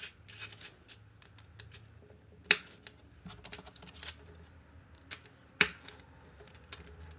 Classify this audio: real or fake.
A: real